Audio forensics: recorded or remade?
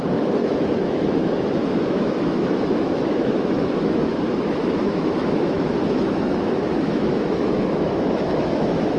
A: remade